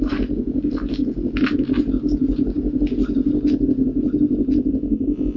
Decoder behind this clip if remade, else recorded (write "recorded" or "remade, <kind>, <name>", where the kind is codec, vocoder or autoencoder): recorded